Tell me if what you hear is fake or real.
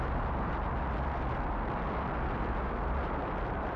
real